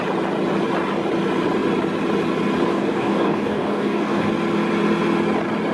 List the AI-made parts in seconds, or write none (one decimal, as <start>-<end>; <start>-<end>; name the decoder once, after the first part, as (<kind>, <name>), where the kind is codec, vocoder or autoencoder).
2.7-4.3 (codec, DAC)